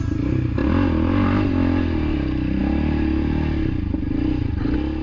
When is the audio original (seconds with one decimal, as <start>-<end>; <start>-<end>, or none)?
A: 0.0-5.0